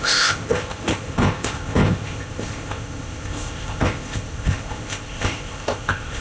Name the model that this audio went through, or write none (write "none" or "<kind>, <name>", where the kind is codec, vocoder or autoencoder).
codec, ZipCodec